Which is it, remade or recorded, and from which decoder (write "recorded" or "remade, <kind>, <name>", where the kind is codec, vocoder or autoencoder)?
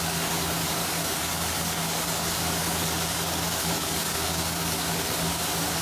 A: remade, codec, DAC